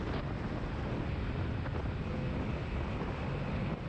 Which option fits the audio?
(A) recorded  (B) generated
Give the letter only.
A